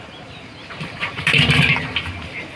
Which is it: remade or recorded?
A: remade